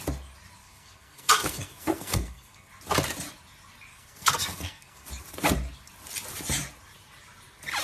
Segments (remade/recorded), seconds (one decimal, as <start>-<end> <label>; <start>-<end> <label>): 0.0-0.6 recorded; 0.6-2.7 remade; 2.7-3.9 recorded; 3.9-5.1 remade; 5.1-7.8 recorded